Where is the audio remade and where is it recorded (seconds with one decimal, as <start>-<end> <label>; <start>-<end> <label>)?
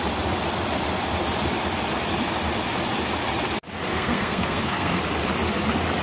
0.0-3.9 recorded; 3.9-5.0 remade; 5.0-6.0 recorded